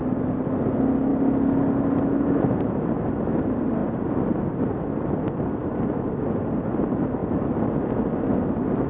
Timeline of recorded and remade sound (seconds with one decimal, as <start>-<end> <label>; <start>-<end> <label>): 0.0-8.9 recorded